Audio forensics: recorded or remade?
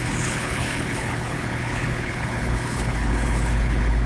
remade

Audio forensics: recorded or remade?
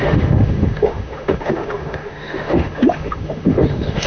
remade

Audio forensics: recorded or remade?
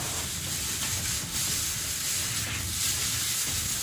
recorded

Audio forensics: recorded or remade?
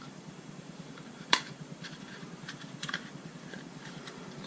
remade